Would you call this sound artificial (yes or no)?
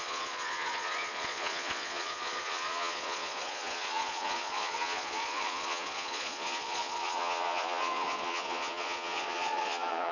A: yes